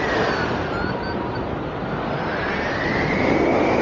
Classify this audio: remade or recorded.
recorded